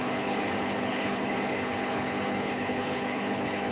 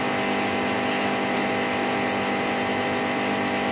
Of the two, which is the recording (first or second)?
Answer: second